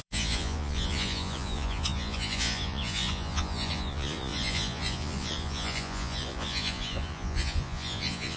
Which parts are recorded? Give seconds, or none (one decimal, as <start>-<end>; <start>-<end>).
none